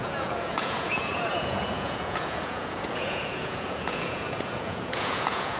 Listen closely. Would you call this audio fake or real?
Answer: fake